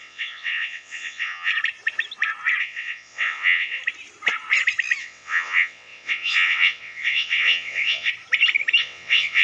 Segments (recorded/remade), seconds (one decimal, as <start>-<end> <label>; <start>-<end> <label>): 0.0-1.5 remade; 1.5-2.6 recorded; 2.6-3.8 remade; 3.8-5.0 recorded; 5.0-8.1 remade; 8.1-8.8 recorded; 8.8-9.4 remade